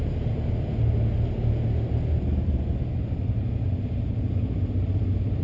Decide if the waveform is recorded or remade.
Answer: recorded